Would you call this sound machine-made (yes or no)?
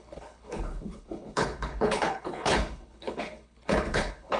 yes